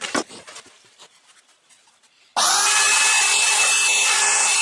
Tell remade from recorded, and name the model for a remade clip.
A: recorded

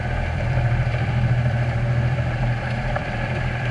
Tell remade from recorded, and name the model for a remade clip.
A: remade, vocoder, BigVGAN v2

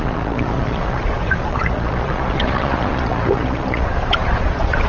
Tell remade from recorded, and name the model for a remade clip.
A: remade, vocoder, Vocos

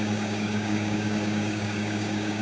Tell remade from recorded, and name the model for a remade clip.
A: remade, codec, DAC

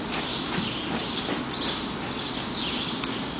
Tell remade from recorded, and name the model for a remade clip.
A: recorded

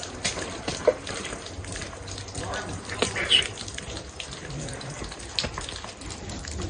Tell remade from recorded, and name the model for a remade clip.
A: recorded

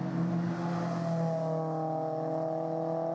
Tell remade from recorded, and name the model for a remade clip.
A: recorded